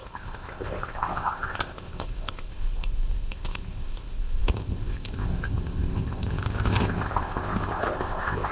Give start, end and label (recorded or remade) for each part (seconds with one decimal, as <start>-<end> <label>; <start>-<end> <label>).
0.0-8.5 remade